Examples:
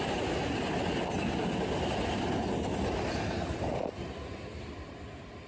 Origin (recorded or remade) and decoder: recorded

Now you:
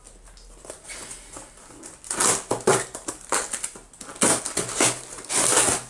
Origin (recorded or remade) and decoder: recorded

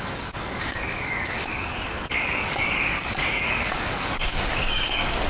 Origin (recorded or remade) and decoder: remade, codec, DAC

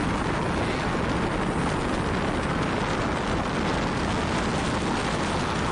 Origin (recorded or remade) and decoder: recorded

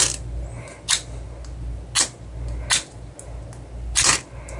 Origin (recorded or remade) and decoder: recorded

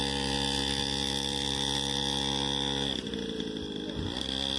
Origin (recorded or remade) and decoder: recorded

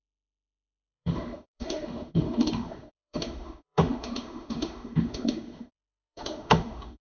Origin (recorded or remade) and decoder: remade, autoencoder, DAC-VAE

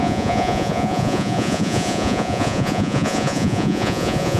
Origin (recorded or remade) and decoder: remade, vocoder, Vocos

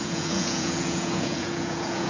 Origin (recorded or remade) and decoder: remade, vocoder, Vocos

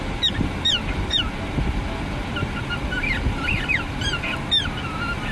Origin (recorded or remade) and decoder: recorded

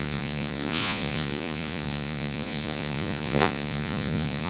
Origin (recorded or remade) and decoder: remade, vocoder, Vocos